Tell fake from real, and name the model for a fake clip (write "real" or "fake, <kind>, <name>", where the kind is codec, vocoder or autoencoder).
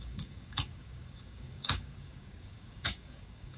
fake, codec, DAC